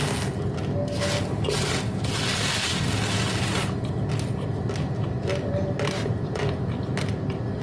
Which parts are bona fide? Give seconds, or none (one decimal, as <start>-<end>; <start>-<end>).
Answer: 0.0-7.6